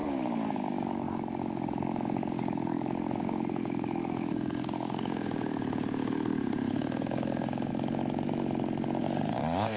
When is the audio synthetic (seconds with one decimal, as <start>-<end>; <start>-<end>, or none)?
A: 0.0-7.7; 9.0-9.8